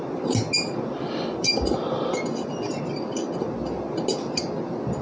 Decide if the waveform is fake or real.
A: real